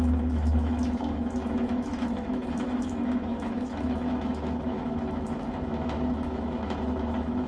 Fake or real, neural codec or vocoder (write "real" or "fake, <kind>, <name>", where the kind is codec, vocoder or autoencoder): fake, autoencoder, DAC-VAE